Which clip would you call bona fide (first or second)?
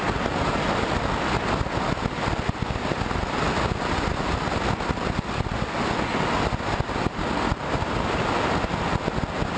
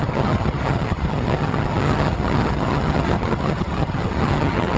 first